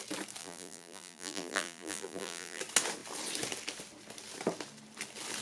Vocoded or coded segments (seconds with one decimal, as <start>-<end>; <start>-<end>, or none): 0.4-2.6